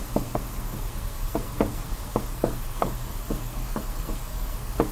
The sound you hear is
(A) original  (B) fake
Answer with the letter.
B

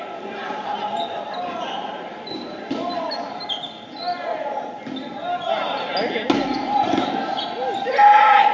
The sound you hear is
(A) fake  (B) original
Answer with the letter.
B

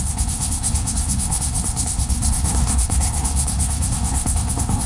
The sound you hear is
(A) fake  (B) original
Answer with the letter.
A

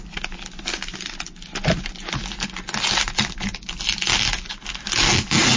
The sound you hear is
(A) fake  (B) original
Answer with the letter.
B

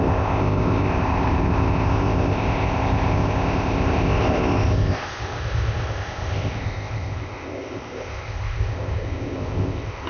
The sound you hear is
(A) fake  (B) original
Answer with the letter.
A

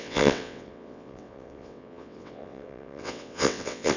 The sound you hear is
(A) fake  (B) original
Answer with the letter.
A